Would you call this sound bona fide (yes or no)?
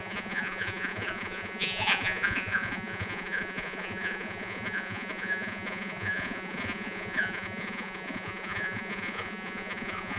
no